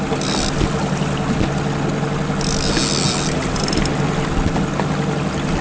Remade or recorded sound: recorded